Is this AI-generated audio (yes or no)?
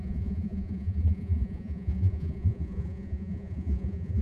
yes